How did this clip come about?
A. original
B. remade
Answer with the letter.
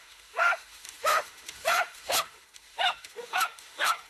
B